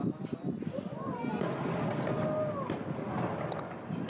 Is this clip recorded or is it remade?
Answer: recorded